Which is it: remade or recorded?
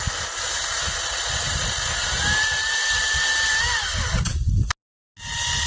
recorded